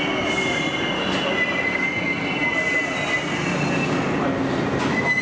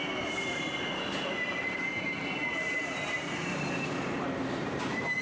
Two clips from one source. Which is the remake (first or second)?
second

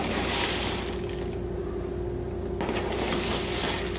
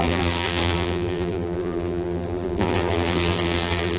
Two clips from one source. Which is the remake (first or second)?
second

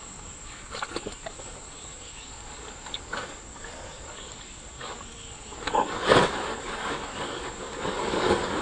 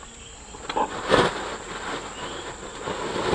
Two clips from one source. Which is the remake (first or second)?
first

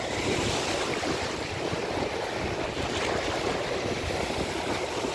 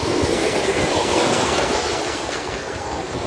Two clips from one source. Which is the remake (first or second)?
second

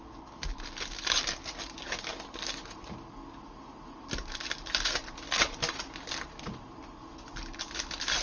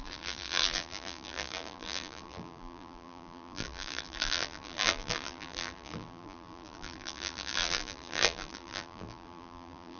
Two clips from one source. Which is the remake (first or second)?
second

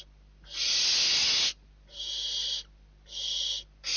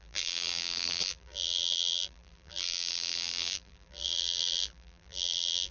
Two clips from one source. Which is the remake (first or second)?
second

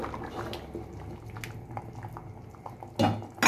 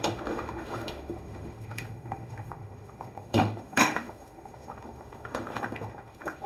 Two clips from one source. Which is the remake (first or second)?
second